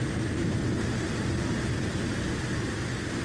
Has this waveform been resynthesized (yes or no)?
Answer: no